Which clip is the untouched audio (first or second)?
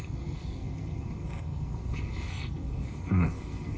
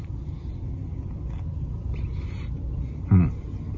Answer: second